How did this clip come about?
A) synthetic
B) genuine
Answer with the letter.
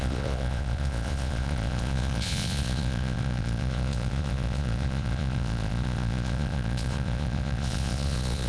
A